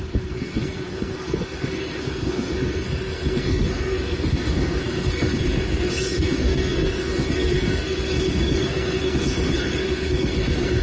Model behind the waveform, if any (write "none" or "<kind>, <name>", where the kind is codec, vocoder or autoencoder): codec, SNAC